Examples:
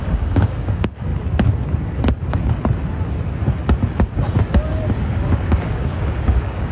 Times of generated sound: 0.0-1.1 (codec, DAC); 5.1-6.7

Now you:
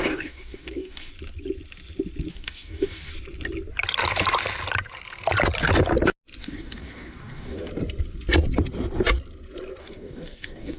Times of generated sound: 0.0-1.1 (codec, DAC); 2.3-3.1; 6.4-7.7; 9.8-10.8

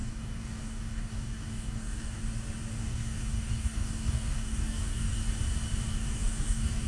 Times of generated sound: 0.0-2.2 (codec, DAC); 2.8-5.2; 5.9-6.9

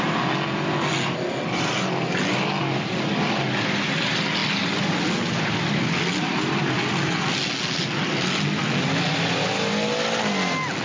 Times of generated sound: none

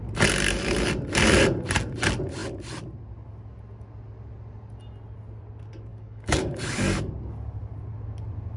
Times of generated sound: 5.9-7.1 (codec, DAC)